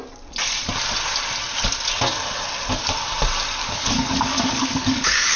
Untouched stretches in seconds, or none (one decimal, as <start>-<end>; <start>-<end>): 0.0-3.6